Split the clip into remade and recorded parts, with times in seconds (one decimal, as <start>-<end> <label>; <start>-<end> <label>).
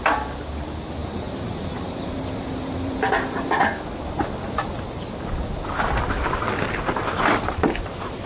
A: 0.0-1.0 recorded; 1.0-3.6 remade; 3.6-8.3 recorded